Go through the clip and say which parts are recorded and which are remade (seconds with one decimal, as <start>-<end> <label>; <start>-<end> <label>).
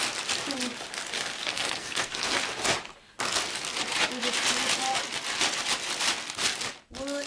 0.0-1.5 recorded; 1.5-2.4 remade; 2.4-7.3 recorded